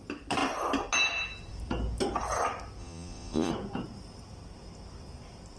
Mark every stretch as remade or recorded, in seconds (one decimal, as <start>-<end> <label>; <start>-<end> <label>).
0.0-2.8 recorded; 2.8-3.5 remade; 3.5-5.6 recorded